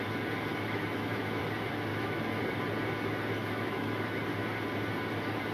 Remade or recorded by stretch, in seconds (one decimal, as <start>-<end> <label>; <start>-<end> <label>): 0.0-0.5 recorded; 0.5-1.4 remade; 1.4-1.9 recorded; 1.9-2.4 remade; 2.4-3.4 recorded; 3.4-4.2 remade; 4.2-5.5 recorded